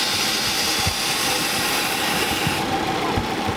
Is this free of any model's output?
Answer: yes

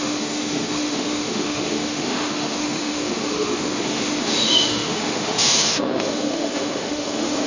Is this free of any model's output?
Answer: no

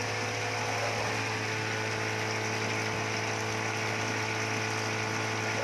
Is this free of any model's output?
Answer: yes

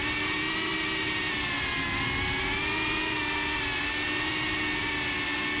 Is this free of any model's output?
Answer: yes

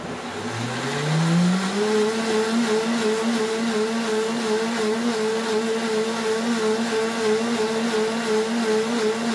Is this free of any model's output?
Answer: yes